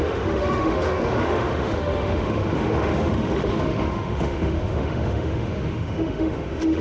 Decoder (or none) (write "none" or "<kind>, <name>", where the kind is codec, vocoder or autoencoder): autoencoder, DAC-VAE